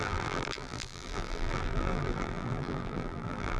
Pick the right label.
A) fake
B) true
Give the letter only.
A